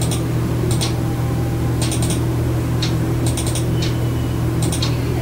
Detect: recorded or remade recorded